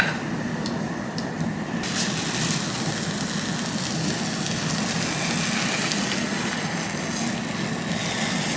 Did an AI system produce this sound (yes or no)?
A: no